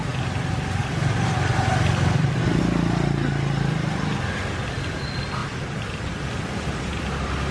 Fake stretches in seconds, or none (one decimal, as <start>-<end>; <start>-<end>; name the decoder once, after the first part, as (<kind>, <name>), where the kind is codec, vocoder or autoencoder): 0.8-2.6 (vocoder, BigVGAN v2); 5.4-7.0